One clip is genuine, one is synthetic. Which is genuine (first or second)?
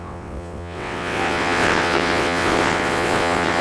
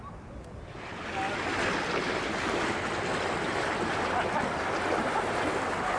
second